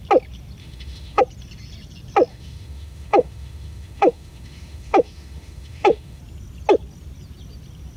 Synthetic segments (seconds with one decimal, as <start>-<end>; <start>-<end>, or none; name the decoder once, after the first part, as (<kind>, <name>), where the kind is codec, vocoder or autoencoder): 0.6-1.2 (autoencoder, DAC-VAE); 2.3-6.2